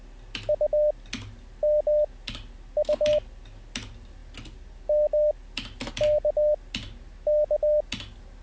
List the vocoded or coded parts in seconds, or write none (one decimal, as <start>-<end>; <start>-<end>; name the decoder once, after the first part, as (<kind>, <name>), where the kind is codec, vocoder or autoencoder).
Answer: none

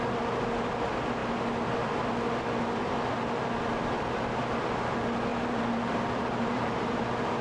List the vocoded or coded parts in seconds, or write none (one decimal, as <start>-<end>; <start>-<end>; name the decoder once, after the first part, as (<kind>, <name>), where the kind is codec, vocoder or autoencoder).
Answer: 5.3-7.0 (vocoder, BigVGAN v2)

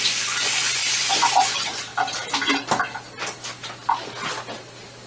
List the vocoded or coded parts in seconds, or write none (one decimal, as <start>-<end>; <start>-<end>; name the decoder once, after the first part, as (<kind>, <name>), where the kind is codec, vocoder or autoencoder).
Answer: 0.0-1.9 (vocoder, Vocos)

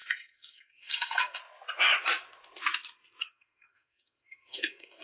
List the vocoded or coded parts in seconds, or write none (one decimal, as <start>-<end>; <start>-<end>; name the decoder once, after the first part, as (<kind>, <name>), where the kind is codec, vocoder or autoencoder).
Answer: 0.0-1.4 (codec, SNAC); 3.2-5.0

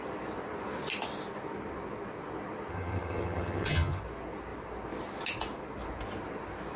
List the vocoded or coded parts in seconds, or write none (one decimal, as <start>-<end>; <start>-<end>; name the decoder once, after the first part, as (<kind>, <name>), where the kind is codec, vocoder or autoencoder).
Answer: 2.7-4.0 (vocoder, HiFi-GAN)

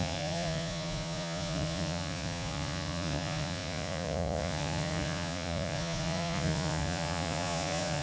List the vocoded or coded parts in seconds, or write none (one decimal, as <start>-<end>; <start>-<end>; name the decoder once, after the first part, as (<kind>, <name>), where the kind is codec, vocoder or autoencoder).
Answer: 0.0-8.0 (vocoder, Vocos)

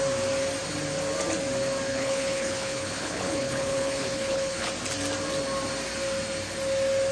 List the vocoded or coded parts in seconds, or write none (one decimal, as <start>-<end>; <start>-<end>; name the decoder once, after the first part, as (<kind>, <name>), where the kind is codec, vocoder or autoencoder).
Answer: 1.9-4.7 (codec, HILCodec)

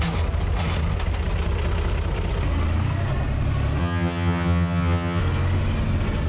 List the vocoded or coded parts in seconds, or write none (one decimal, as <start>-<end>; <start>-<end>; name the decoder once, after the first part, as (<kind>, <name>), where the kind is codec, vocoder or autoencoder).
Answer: 3.8-5.2 (vocoder, HiFi-GAN)